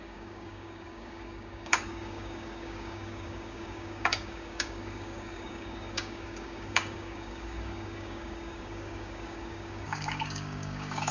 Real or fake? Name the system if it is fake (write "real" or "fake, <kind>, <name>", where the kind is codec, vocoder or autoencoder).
fake, codec, DAC